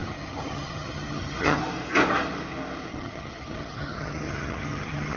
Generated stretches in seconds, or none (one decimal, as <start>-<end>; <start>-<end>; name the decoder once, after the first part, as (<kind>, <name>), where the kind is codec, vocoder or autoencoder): 0.0-1.6 (vocoder, HiFi-GAN); 2.9-5.2